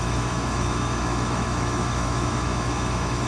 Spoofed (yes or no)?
yes